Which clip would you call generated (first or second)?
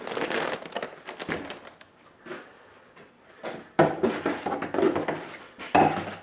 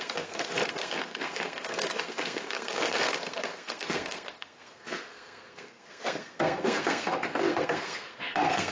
second